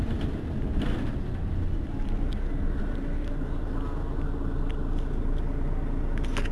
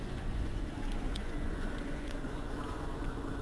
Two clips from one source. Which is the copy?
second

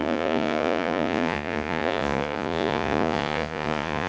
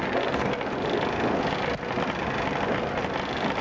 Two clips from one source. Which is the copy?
first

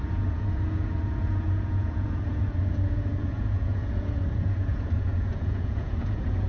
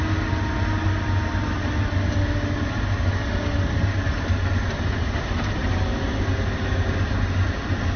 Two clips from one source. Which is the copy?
first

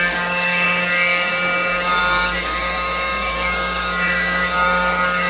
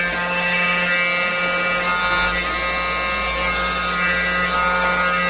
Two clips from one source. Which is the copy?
first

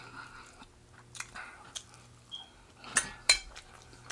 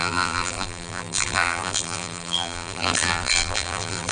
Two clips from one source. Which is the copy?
second